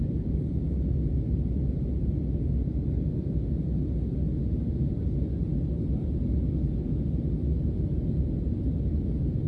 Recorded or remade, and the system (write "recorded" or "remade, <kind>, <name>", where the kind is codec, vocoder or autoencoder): recorded